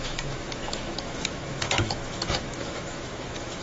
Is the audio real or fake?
fake